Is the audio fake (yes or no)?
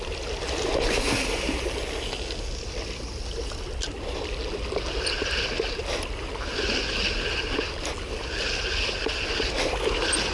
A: no